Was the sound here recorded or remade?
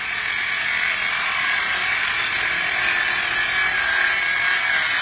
recorded